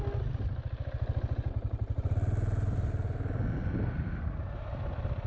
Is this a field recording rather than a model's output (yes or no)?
yes